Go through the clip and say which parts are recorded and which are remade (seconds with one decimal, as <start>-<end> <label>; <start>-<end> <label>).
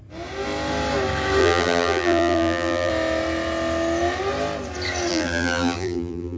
0.0-1.4 recorded; 1.4-2.9 remade; 2.9-5.1 recorded; 5.1-6.4 remade